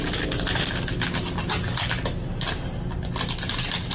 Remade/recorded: recorded